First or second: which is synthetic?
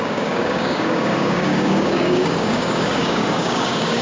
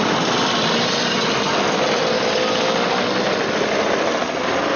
first